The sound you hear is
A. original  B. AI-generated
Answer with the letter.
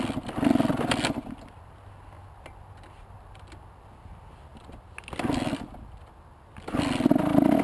A